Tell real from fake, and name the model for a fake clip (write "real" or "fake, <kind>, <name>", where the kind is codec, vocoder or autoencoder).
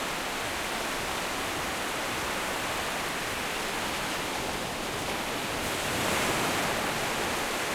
real